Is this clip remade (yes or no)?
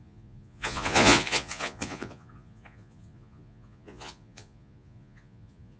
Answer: yes